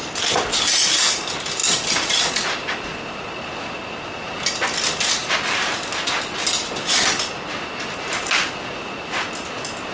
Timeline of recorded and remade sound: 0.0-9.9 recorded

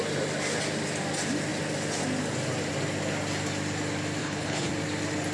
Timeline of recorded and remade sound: 0.0-4.2 recorded; 4.2-4.7 remade; 4.7-5.3 recorded